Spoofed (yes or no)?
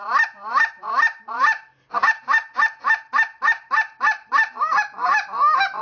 no